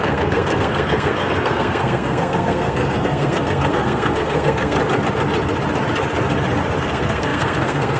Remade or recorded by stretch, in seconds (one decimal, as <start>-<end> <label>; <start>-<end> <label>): 0.0-4.8 remade; 4.8-6.8 recorded; 6.8-8.0 remade